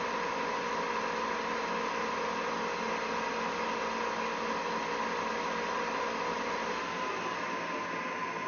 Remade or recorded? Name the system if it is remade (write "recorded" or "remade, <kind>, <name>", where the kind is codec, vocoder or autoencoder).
recorded